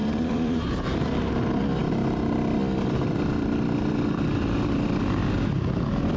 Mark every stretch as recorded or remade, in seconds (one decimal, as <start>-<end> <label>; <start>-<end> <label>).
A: 0.0-1.1 remade; 1.1-6.2 recorded